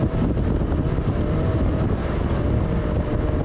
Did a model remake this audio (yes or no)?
no